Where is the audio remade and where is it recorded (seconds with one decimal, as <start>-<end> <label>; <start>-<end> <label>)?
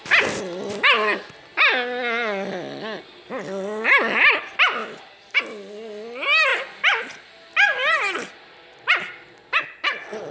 0.0-6.5 recorded; 6.5-9.6 remade; 9.6-10.3 recorded